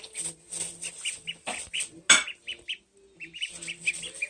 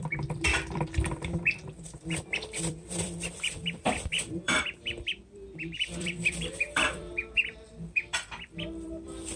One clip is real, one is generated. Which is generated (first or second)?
second